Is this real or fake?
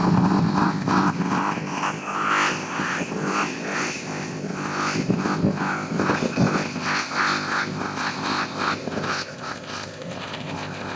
fake